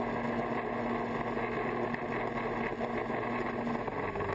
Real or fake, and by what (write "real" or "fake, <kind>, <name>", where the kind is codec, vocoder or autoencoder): real